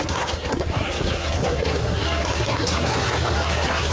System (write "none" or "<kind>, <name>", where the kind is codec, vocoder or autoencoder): codec, SNAC